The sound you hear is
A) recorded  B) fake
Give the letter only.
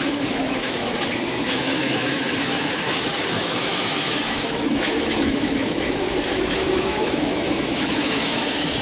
B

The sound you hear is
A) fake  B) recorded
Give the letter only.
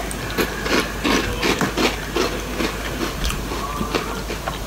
B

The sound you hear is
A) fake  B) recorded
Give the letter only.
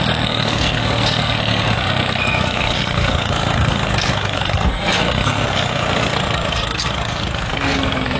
A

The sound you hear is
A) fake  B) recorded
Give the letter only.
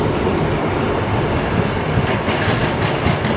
A